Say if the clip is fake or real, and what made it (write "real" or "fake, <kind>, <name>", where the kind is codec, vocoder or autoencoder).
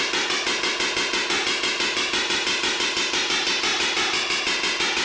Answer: real